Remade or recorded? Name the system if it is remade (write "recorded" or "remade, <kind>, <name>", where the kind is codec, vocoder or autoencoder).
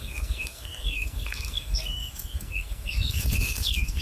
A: remade, codec, SNAC